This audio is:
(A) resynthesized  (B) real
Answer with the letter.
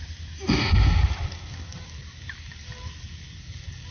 B